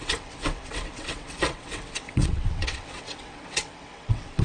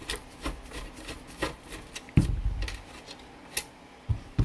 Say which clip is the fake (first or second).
first